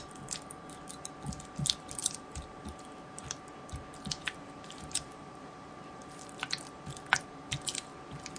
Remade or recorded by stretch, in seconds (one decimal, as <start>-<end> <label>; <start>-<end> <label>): 0.0-2.0 recorded; 2.0-2.8 remade; 2.8-4.2 recorded; 4.2-6.5 remade; 6.5-8.4 recorded